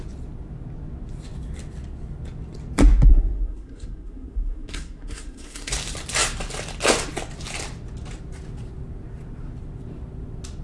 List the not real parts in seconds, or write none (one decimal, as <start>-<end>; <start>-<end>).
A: 3.1-5.7